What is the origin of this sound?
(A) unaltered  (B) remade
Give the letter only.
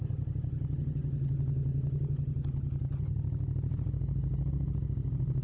A